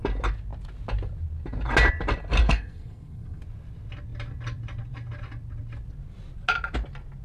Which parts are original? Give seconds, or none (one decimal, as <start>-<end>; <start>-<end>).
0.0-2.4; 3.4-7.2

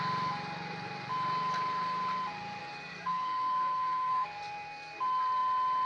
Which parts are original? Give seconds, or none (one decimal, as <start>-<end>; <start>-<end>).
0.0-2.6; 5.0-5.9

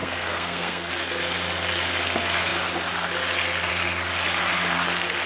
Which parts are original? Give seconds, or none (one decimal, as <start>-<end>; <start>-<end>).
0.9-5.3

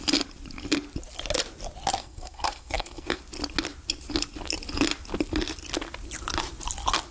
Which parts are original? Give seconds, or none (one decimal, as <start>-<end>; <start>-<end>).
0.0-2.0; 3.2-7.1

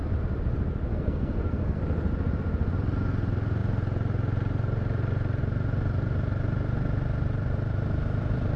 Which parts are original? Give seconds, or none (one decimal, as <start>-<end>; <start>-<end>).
0.0-0.9; 1.8-8.6

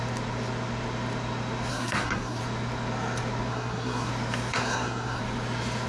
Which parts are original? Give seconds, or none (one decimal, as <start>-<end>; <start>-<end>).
0.0-1.7; 2.4-3.5; 4.1-4.5; 5.2-5.9

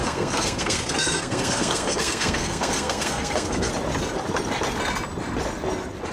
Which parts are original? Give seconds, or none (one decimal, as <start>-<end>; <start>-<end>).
3.7-6.1